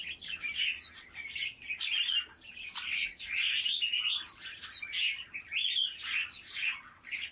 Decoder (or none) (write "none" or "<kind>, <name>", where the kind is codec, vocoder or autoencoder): none